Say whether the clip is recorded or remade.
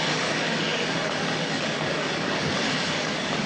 remade